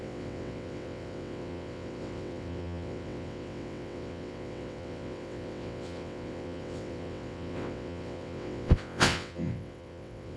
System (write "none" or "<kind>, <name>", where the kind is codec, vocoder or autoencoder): vocoder, WaveNeXt